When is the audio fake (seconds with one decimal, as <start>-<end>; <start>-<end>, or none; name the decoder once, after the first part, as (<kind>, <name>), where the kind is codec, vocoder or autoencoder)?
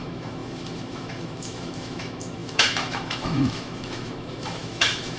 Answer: 0.0-5.2 (autoencoder, DAC-VAE)